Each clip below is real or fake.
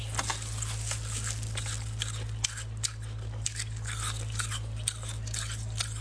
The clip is real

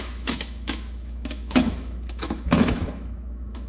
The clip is fake